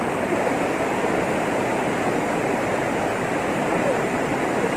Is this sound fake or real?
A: real